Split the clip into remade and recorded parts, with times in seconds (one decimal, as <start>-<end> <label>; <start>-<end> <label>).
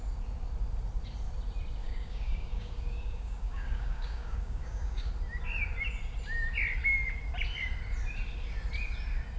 0.0-1.8 recorded; 1.8-5.1 remade; 5.1-9.4 recorded